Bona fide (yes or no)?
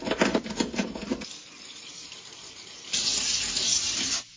yes